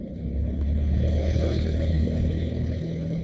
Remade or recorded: remade